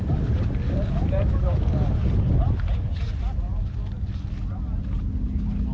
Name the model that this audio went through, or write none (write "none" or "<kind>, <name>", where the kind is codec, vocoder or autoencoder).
none